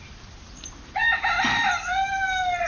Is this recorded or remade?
recorded